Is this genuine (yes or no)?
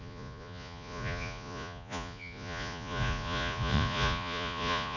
no